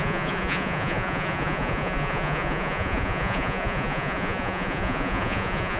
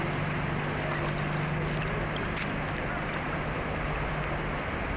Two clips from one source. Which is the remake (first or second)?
first